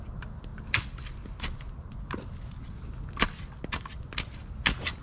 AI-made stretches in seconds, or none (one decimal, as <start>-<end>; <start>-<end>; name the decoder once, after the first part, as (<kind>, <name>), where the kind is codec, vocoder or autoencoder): none